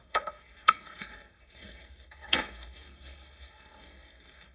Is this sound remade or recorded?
remade